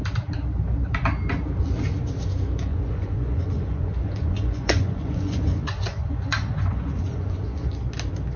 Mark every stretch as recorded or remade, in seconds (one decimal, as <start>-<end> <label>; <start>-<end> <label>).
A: 0.0-2.7 recorded; 2.7-7.7 remade; 7.7-8.4 recorded